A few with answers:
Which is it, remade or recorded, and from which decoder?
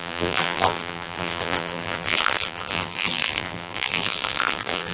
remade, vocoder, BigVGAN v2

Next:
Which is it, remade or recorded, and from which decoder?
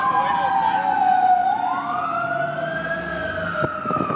recorded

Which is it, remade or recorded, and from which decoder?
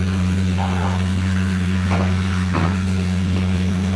remade, codec, SNAC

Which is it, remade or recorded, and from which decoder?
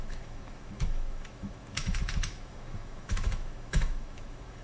remade, autoencoder, DAC-VAE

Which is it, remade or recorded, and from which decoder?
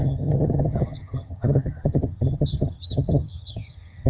remade, vocoder, HiFi-GAN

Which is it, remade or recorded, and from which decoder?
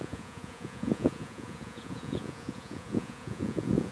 remade, vocoder, Vocos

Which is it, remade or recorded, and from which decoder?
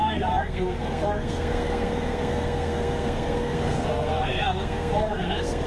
remade, codec, SNAC